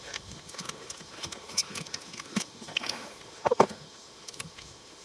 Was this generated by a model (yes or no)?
yes